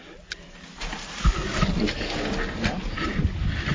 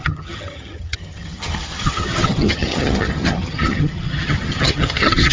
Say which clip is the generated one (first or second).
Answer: second